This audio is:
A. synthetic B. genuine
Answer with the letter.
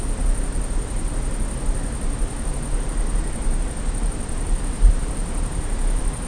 B